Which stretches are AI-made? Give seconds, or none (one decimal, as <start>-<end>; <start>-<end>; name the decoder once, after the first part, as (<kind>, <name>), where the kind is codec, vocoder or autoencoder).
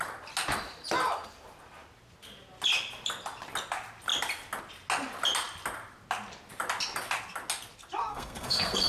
8.1-8.9 (codec, SNAC)